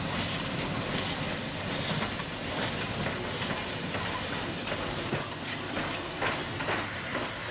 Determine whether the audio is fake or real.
real